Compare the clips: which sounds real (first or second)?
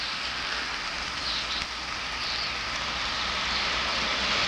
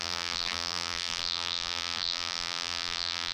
first